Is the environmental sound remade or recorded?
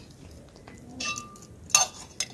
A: recorded